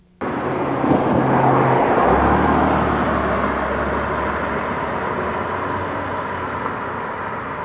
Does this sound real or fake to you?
real